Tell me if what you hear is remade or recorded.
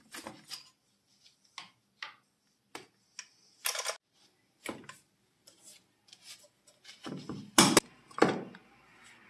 recorded